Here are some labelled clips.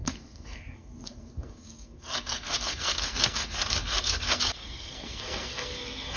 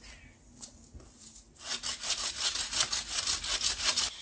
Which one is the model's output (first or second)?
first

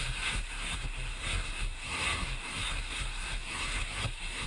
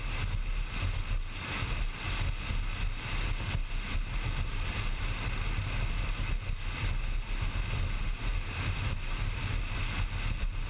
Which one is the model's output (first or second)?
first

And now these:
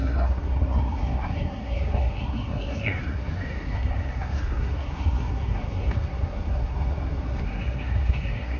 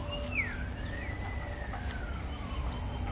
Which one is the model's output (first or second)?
first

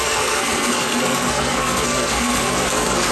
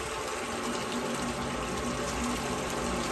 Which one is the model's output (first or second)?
first